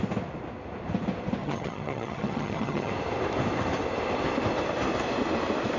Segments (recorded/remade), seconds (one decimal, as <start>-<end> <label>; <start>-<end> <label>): 0.0-1.4 recorded; 1.4-2.9 remade; 2.9-5.8 recorded